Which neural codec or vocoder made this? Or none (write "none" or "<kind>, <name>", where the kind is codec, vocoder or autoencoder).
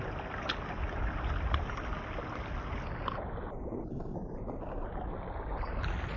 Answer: none